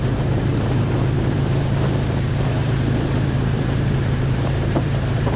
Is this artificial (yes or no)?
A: yes